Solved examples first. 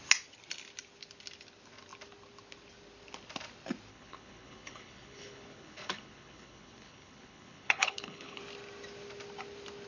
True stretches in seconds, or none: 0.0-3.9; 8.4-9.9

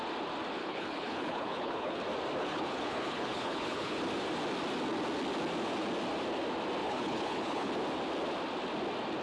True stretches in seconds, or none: 0.0-0.6; 2.0-2.4; 4.0-6.8; 7.7-9.2

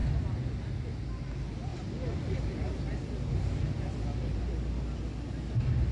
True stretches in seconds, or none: 0.0-5.9

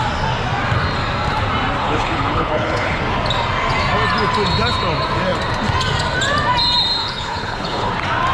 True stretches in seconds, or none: 0.0-1.8; 3.0-7.0; 7.9-8.3